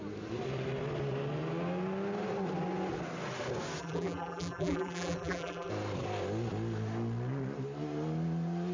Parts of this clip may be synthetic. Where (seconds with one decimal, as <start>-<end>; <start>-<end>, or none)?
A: 3.8-5.7